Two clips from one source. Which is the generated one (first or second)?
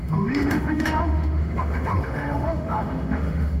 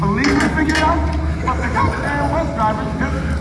first